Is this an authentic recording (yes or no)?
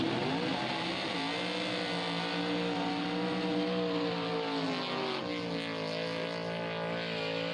yes